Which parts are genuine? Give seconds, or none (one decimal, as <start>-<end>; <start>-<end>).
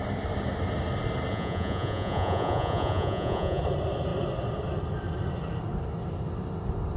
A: 0.0-1.3; 3.6-7.0